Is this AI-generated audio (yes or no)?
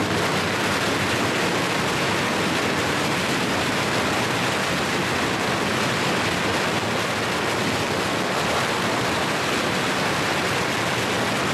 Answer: no